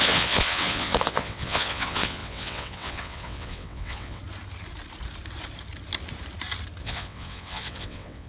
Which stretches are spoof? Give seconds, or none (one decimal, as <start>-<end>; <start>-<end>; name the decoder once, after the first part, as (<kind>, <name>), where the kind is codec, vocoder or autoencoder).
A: 0.0-4.2 (vocoder, WaveNeXt); 6.8-8.3